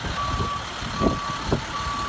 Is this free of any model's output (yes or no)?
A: yes